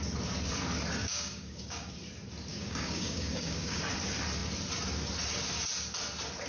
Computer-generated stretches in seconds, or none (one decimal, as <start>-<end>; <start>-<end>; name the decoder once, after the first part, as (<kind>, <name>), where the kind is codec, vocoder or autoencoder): 1.0-1.9 (codec, DAC); 2.5-3.8

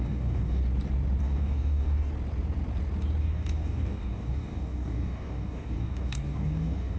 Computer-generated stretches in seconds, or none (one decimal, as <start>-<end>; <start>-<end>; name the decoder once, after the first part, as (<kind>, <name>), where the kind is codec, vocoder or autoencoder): 0.0-0.6 (codec, DAC); 1.2-2.1; 3.2-7.0

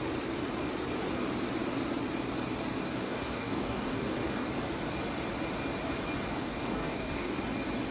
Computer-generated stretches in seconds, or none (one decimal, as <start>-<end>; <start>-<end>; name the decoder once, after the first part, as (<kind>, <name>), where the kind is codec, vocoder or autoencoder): 2.8-4.5 (codec, DAC); 6.4-7.4

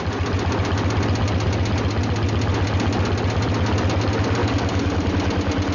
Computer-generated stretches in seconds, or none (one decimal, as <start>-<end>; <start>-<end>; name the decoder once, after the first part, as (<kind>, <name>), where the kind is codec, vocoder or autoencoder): 4.4-5.1 (codec, DAC)

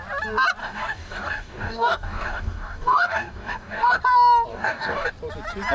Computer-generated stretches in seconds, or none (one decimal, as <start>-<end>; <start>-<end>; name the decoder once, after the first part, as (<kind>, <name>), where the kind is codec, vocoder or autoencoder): 0.6-4.0 (codec, DAC); 4.5-5.1

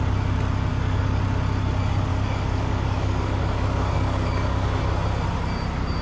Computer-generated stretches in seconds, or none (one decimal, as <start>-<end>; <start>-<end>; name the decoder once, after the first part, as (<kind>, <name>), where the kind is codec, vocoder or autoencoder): 0.7-1.2 (codec, DAC); 2.1-4.8

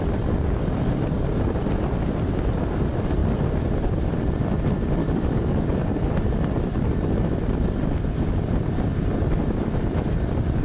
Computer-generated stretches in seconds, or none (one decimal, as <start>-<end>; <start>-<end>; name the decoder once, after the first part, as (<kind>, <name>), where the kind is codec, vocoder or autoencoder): 5.0-5.8 (codec, DAC)

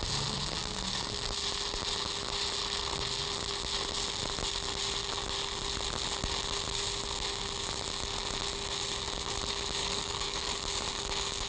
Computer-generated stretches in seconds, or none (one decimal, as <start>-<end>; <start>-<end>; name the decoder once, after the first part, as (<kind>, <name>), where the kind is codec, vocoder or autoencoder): 0.6-1.1 (codec, DAC); 9.8-10.5